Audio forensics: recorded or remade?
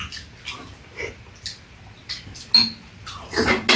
recorded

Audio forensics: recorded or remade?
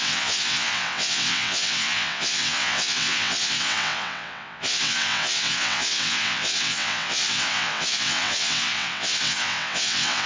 remade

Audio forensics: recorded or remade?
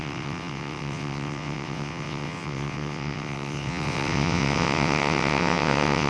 remade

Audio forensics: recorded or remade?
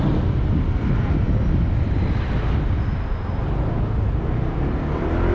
recorded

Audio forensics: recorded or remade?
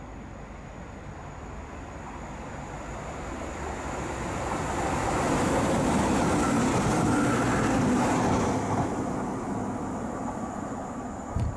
recorded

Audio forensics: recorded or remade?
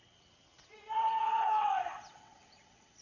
remade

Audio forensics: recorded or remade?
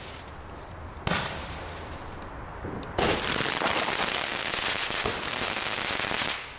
recorded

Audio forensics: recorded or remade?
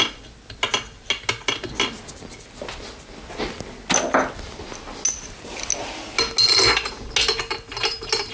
recorded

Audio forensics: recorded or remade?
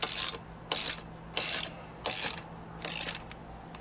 recorded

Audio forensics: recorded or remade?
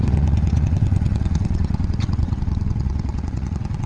remade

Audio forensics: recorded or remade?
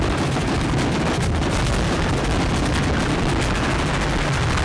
recorded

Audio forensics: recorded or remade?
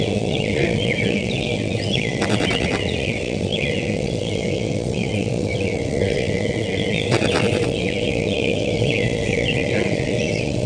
remade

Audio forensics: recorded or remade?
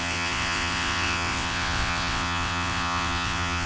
remade